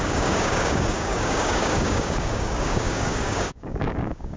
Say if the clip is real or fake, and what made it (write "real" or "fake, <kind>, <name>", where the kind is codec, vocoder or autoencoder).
fake, codec, DAC